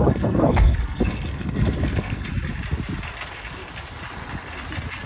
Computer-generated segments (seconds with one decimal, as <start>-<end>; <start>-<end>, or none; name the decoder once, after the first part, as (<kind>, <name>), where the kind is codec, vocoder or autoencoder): 0.0-2.3 (codec, SNAC)